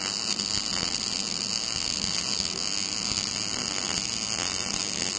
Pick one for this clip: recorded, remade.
recorded